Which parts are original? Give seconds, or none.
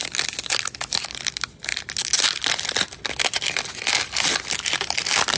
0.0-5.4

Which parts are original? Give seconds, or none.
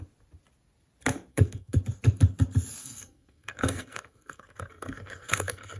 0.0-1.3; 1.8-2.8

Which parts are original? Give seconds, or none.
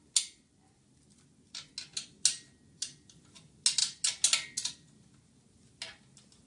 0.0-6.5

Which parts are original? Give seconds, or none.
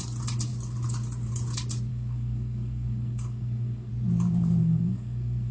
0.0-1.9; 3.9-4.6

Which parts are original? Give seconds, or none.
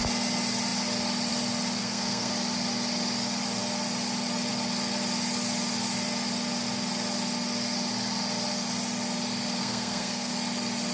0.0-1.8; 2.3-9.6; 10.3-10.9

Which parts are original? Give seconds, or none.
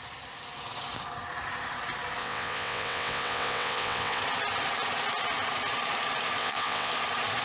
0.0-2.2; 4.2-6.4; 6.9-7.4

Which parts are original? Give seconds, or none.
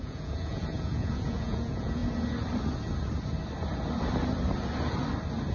2.0-5.5